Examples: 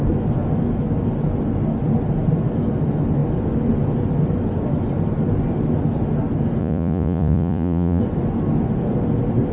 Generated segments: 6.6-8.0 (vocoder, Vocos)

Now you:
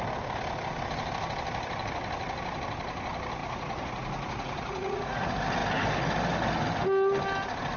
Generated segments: 3.4-5.3 (vocoder, Vocos)

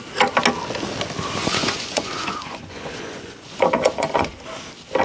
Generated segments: 1.4-4.4 (vocoder, Vocos)

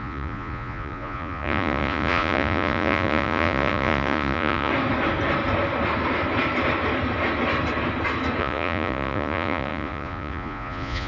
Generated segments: 0.0-4.7 (vocoder, Vocos); 8.4-11.1

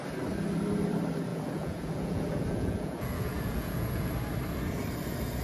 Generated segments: 1.3-4.1 (vocoder, Vocos)

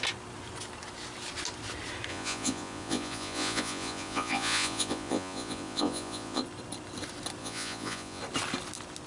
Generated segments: 2.1-6.4 (vocoder, Vocos); 7.4-8.2

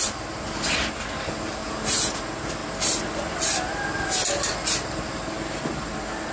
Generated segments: 1.6-2.2 (vocoder, Vocos)

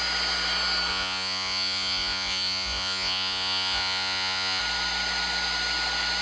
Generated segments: 0.9-4.6 (vocoder, Vocos)